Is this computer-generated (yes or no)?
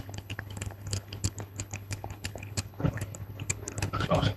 yes